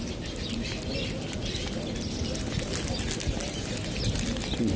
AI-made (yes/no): no